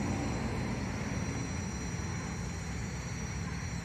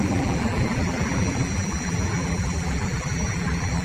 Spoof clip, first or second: second